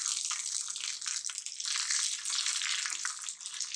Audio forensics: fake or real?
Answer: real